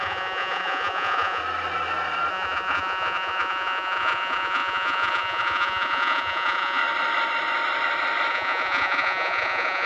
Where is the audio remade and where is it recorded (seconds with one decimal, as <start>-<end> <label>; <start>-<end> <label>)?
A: 0.0-1.4 remade; 1.4-2.3 recorded; 2.3-6.8 remade; 6.8-8.3 recorded; 8.3-9.9 remade